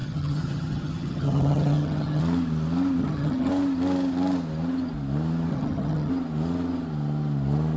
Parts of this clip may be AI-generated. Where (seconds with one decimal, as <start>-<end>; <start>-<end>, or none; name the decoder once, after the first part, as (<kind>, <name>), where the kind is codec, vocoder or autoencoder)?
0.0-2.2 (vocoder, HiFi-GAN); 3.0-3.5; 5.5-6.1